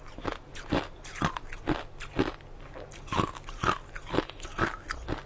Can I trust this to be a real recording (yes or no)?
yes